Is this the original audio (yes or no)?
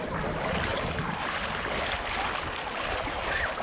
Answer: yes